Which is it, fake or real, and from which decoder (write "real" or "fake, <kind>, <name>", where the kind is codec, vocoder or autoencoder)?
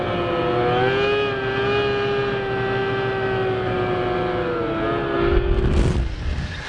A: real